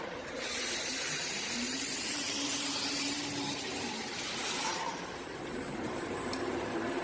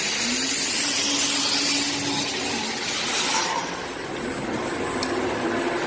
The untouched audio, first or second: second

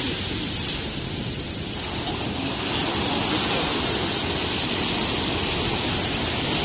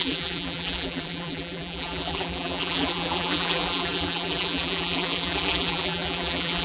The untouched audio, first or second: first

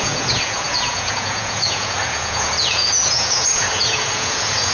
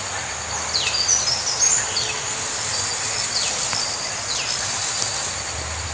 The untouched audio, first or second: second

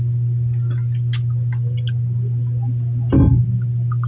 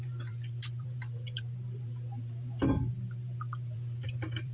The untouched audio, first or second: first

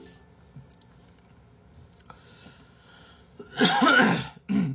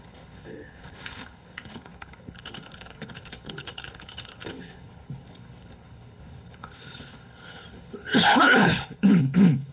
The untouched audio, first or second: first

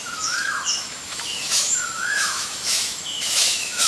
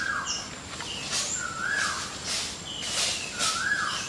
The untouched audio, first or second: second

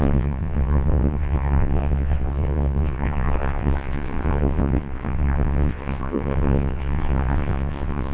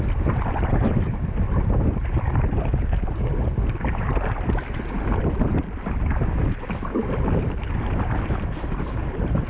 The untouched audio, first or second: second